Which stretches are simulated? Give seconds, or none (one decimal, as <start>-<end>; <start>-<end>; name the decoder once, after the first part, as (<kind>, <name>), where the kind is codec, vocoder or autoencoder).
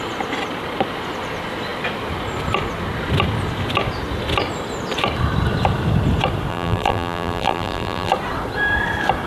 6.5-8.1 (vocoder, BigVGAN v2)